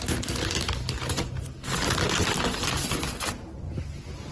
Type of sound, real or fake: real